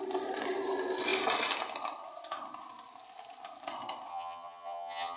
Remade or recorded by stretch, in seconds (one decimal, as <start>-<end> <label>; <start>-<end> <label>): 0.0-4.1 recorded; 4.1-5.2 remade